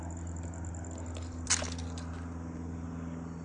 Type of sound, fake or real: real